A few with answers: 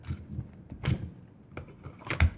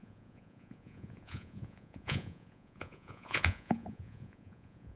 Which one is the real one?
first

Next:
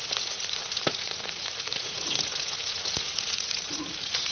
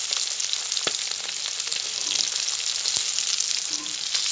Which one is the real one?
second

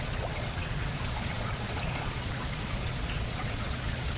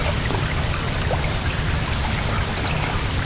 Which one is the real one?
second